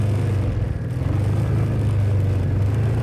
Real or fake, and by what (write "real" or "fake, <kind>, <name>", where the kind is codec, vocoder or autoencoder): real